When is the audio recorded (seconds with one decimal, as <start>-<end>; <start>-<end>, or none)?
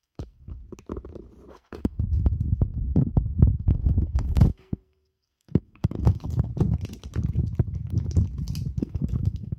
0.6-1.5; 6.5-8.8